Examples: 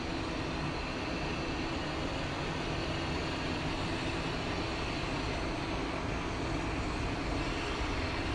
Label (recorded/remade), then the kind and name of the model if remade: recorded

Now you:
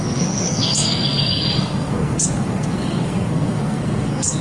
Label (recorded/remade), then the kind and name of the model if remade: remade, codec, SNAC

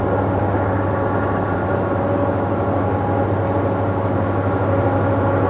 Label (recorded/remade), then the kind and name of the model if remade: recorded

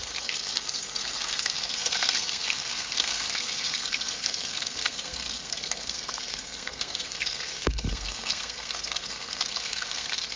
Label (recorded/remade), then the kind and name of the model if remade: remade, codec, SNAC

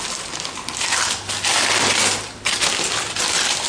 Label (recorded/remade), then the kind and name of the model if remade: recorded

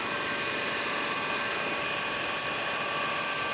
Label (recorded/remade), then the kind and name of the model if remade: recorded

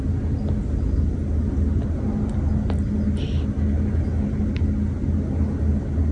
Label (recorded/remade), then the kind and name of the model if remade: recorded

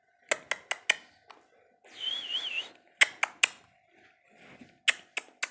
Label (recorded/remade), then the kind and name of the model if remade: recorded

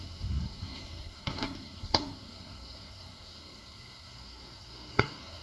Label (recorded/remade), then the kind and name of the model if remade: remade, codec, SNAC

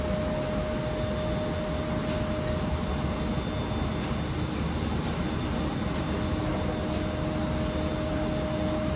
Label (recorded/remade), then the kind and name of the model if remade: recorded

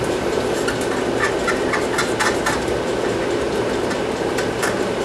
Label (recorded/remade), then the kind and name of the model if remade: recorded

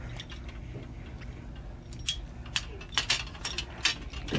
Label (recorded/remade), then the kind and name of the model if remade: recorded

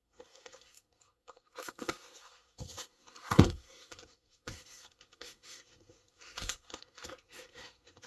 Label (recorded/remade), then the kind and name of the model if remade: remade, codec, SNAC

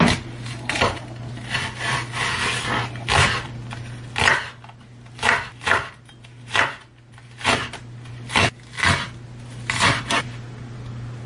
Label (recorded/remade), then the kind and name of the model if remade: recorded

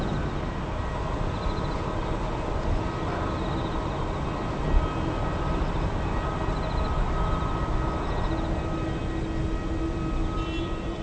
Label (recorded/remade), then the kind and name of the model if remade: recorded